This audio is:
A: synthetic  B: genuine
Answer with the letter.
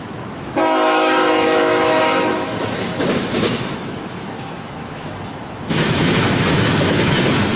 A